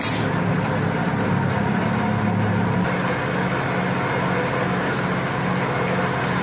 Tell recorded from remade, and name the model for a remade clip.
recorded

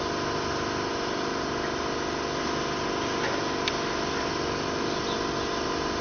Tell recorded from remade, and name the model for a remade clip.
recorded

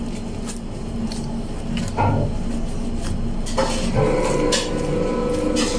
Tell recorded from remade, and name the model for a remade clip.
recorded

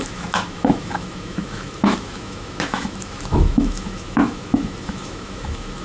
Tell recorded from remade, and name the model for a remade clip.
remade, autoencoder, DAC-VAE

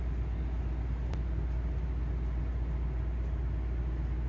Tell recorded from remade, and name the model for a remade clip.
recorded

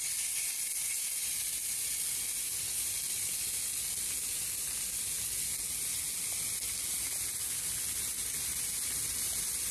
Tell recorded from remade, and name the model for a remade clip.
recorded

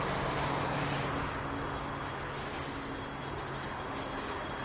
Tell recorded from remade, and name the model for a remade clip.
recorded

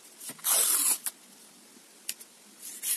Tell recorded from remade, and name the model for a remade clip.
recorded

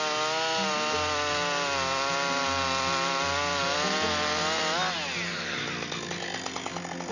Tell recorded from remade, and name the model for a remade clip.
recorded